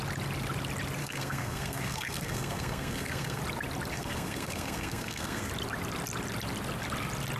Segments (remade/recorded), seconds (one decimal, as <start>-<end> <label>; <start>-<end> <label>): 0.0-1.0 recorded; 1.0-3.4 remade; 3.4-3.9 recorded; 3.9-5.5 remade; 5.5-7.4 recorded